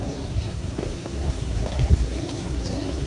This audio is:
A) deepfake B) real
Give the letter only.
A